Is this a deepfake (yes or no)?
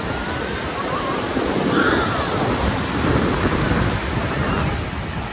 no